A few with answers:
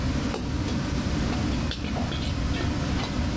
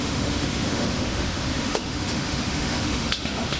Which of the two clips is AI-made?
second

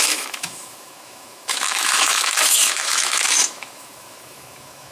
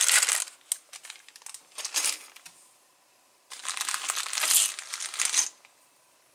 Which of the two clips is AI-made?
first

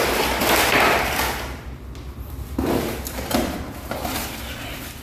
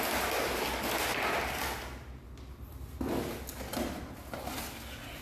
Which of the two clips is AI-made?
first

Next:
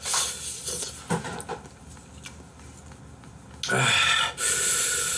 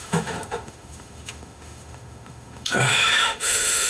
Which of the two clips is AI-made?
second